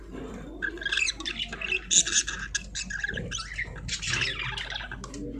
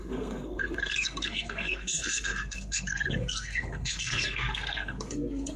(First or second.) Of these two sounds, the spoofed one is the second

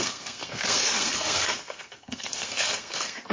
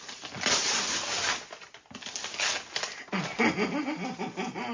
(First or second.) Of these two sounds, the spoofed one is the first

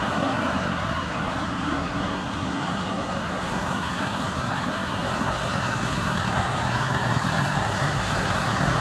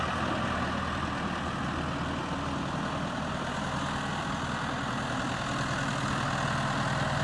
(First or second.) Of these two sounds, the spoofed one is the first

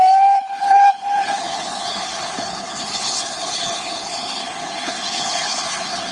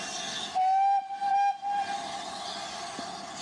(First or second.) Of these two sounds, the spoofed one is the first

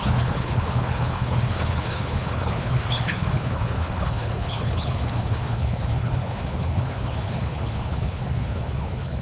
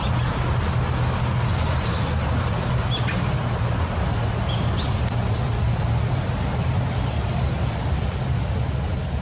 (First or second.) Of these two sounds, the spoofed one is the first